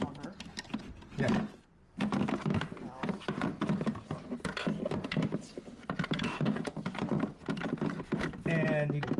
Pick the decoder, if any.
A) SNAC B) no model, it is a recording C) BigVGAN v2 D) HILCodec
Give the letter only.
B